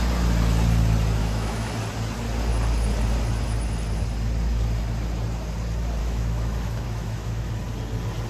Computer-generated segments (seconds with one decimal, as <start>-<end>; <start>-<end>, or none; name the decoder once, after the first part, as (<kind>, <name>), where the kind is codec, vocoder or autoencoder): 1.2-1.7 (autoencoder, DAC-VAE); 6.0-7.5